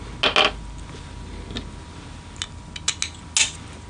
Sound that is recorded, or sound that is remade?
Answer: recorded